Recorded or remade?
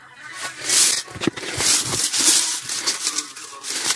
recorded